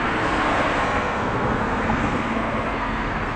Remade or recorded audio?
remade